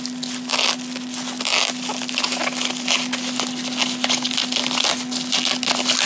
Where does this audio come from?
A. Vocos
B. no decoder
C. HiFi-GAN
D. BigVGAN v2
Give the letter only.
B